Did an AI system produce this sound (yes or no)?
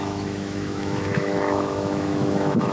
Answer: yes